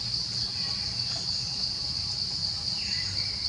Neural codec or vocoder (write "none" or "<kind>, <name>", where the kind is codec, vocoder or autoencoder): none